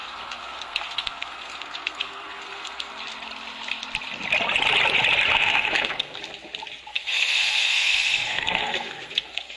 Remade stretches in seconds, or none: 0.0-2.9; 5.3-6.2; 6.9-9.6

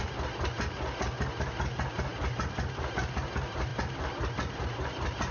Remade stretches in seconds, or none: none

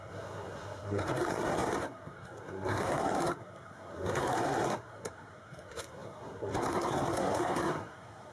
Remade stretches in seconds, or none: 0.0-8.3

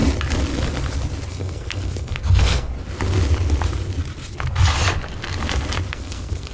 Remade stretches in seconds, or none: 1.3-2.7; 5.9-6.5

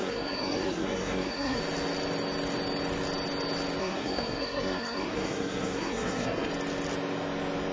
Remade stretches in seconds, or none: 0.0-1.6; 3.8-6.5

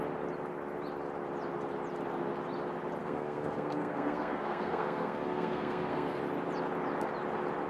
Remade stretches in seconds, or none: 3.0-6.2

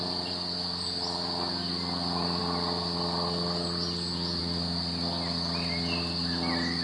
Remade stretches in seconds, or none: none

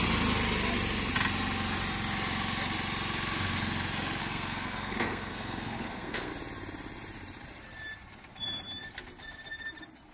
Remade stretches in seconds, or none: 4.2-6.3